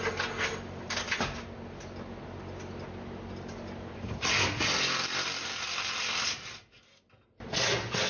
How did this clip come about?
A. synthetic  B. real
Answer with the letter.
B